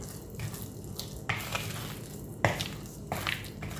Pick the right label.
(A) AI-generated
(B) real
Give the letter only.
B